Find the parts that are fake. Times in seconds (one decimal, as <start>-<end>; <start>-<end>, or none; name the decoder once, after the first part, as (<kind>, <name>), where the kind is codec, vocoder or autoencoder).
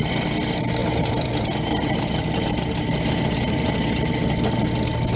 0.8-3.9 (vocoder, BigVGAN v2)